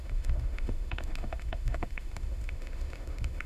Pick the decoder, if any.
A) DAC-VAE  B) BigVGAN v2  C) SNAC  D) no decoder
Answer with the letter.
A